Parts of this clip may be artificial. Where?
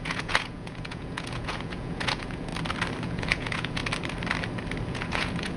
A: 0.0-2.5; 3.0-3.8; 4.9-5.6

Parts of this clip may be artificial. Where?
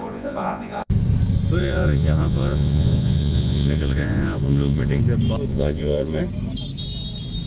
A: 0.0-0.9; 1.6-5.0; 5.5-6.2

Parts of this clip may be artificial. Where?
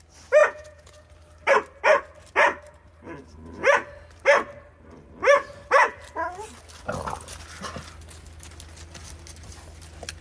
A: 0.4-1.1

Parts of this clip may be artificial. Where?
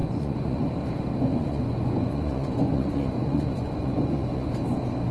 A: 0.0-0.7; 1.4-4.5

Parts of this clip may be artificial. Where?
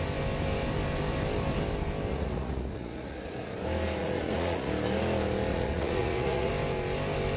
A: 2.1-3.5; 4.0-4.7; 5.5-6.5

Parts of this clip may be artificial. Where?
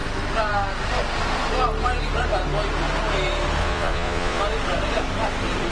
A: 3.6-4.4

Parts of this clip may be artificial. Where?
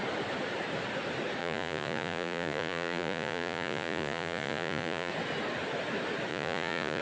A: 1.4-5.1; 6.3-7.0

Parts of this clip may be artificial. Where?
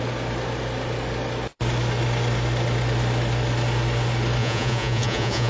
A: 4.4-5.5